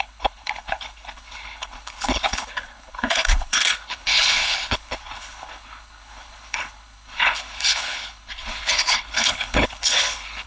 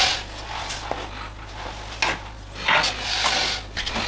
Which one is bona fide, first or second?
second